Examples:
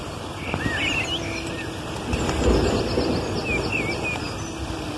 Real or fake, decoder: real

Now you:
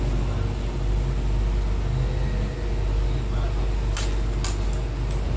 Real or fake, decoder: real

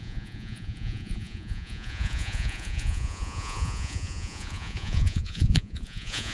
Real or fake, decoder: fake, vocoder, Vocos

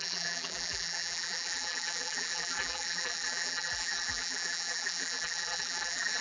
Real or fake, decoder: fake, vocoder, BigVGAN v2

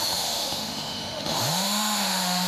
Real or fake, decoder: fake, autoencoder, DAC-VAE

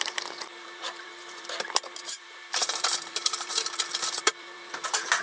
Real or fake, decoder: fake, vocoder, BigVGAN v2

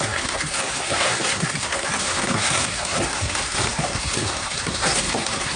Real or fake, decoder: fake, codec, SNAC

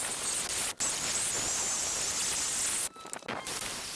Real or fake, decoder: real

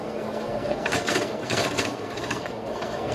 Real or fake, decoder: fake, codec, SNAC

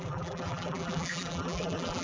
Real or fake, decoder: fake, vocoder, BigVGAN v2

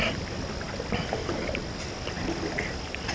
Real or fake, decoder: real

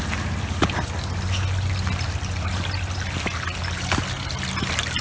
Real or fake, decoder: real